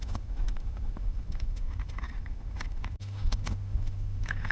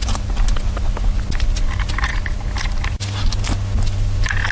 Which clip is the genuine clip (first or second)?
second